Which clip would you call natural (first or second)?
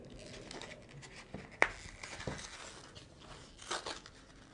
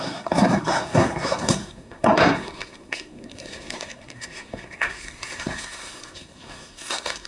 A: first